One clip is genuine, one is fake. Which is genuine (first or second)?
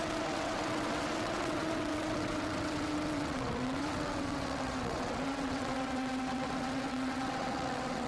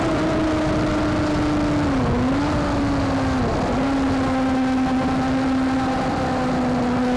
second